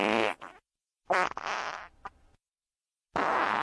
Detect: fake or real real